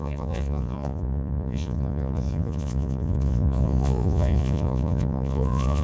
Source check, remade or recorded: remade